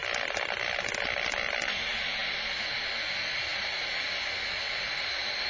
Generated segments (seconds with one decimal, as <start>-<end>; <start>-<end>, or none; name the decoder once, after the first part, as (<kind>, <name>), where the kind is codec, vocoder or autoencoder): none